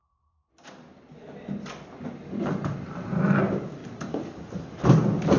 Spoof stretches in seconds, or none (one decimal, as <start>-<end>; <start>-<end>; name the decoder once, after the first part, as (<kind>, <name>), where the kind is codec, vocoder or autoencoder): none